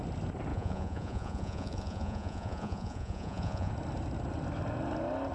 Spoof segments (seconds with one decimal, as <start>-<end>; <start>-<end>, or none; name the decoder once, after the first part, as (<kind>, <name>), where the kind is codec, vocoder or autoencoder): 0.5-3.7 (vocoder, Vocos)